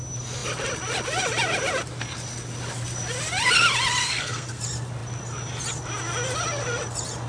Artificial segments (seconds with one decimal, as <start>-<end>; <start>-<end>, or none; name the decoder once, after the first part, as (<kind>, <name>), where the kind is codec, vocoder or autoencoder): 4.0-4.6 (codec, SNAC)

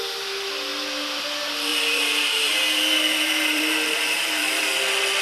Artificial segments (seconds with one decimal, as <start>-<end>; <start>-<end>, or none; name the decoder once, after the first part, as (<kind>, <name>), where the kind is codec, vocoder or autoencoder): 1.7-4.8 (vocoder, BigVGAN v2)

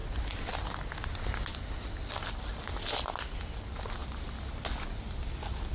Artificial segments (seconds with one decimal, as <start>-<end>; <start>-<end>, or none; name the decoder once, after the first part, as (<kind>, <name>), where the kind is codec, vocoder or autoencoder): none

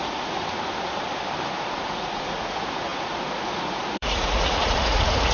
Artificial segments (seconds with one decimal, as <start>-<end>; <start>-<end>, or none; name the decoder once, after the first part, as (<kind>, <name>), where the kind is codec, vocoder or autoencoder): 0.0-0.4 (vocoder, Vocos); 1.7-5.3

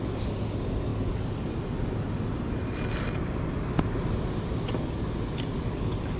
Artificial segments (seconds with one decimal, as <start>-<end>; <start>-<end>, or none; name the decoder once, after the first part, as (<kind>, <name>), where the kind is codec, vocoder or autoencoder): none